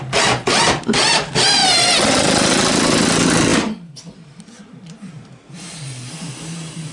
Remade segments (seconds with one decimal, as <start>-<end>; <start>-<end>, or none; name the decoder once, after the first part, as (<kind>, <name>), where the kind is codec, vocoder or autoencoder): 3.5-6.1 (vocoder, BigVGAN v2)